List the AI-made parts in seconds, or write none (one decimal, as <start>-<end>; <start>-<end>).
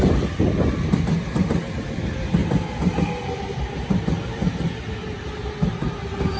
none